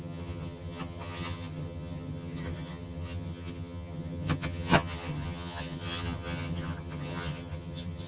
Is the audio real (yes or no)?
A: no